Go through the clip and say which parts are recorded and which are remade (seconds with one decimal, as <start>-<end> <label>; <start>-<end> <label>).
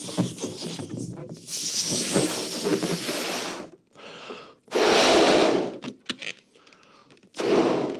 0.0-1.2 recorded; 1.2-2.2 remade; 2.2-8.0 recorded